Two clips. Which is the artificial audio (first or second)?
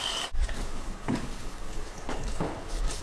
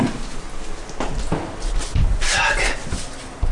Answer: first